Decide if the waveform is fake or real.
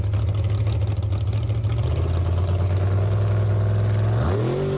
real